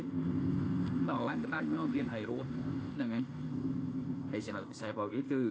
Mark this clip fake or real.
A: fake